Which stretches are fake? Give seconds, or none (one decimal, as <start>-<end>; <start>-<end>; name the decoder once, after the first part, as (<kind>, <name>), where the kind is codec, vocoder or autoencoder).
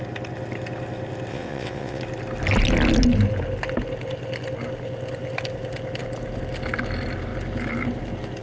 1.3-2.0 (vocoder, WaveNeXt)